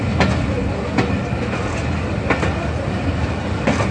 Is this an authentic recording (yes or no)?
yes